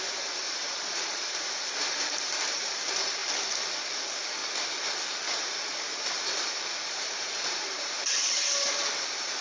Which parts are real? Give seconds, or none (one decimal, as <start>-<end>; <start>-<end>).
4.4-5.9